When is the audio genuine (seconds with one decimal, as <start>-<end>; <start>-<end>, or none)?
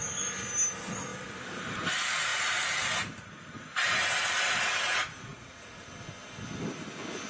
0.0-5.3; 5.9-7.3